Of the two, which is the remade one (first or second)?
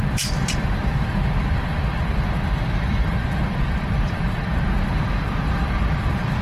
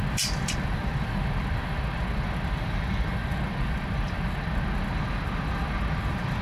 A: first